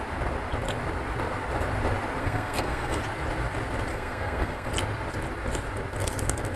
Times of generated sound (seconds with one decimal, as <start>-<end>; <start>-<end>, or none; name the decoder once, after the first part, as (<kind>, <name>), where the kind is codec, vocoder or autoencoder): 2.2-3.0 (codec, SNAC); 3.9-4.7